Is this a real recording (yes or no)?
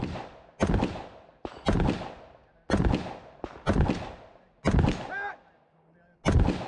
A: yes